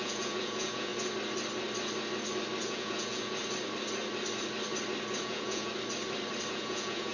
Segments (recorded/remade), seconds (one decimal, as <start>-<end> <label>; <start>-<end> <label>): 0.0-0.9 remade; 0.9-2.6 recorded; 2.6-3.4 remade; 3.4-5.2 recorded; 5.2-5.7 remade; 5.7-6.5 recorded; 6.5-7.1 remade